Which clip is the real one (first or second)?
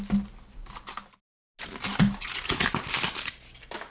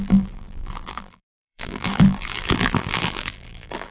first